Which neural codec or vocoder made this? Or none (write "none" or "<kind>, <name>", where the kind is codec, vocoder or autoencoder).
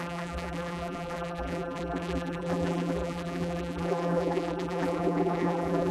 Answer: vocoder, BigVGAN v2